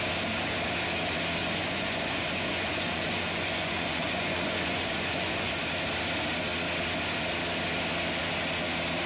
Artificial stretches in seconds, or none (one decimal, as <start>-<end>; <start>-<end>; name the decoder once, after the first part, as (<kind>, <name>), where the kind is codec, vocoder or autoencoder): 1.4-5.5 (vocoder, Vocos)